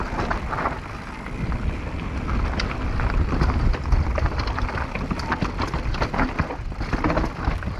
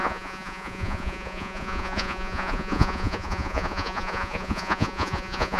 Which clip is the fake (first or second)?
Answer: second